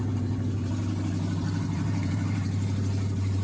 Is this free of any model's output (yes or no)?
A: no